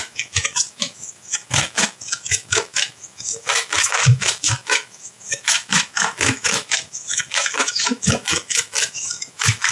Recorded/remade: remade